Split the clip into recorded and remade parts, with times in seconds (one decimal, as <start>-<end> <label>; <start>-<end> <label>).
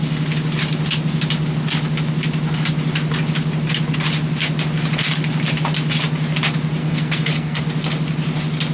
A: 0.0-6.8 recorded; 6.8-7.6 remade; 7.6-8.7 recorded